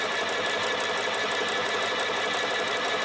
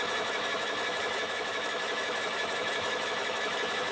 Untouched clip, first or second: first